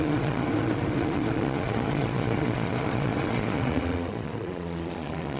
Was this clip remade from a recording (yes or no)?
yes